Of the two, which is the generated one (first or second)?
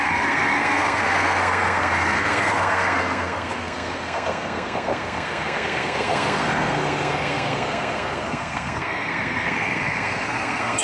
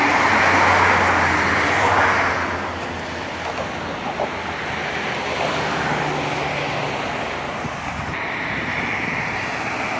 first